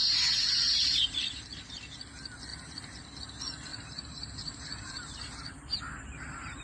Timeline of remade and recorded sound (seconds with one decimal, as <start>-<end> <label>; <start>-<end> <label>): 0.0-2.5 recorded; 2.5-3.0 remade; 3.0-3.7 recorded; 3.7-5.8 remade; 5.8-6.6 recorded